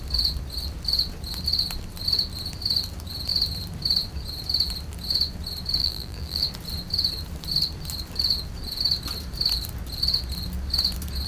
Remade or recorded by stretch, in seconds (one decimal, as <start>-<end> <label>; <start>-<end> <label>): 0.0-5.8 recorded; 5.8-6.4 remade; 6.4-11.3 recorded